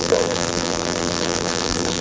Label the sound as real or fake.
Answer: fake